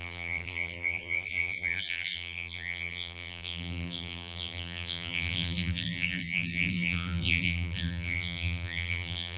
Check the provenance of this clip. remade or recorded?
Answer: remade